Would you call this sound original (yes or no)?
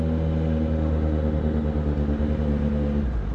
yes